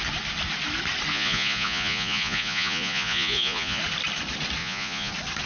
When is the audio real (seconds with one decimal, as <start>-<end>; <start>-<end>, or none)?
0.0-1.1; 3.8-4.6; 5.1-5.5